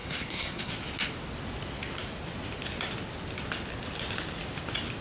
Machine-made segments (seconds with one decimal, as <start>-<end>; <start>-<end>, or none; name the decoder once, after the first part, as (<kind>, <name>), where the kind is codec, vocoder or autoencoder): 0.0-0.7 (codec, SNAC)